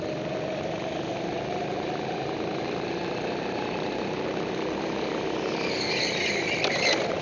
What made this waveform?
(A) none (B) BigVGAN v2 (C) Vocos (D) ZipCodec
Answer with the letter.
A